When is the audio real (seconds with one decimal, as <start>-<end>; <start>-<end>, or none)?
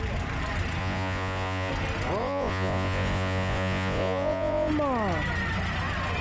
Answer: 0.0-0.8; 1.7-2.2; 4.7-6.2